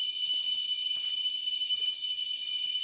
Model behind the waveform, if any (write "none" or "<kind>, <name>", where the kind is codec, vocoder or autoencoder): vocoder, HiFi-GAN